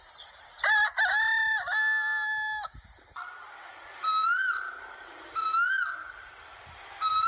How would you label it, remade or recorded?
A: recorded